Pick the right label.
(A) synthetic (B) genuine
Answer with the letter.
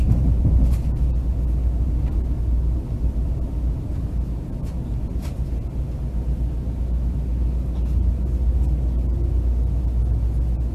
B